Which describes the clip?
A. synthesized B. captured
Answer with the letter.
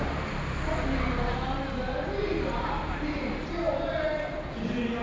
B